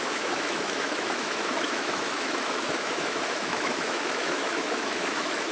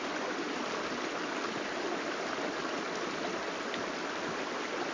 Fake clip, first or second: first